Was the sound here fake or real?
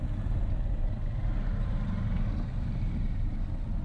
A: real